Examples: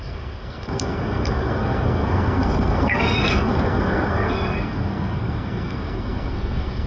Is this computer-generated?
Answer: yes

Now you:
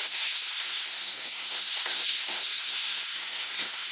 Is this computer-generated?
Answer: yes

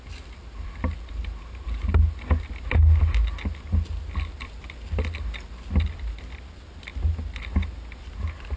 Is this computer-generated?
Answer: no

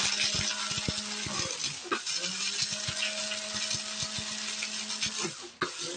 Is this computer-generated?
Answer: no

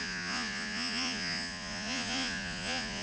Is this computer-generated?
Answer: yes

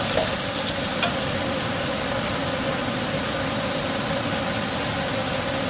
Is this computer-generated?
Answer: no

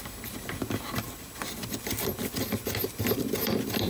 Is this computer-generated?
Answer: no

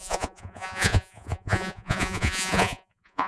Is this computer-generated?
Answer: yes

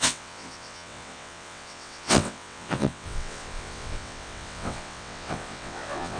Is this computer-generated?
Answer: yes